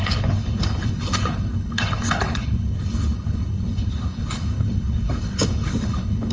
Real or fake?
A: fake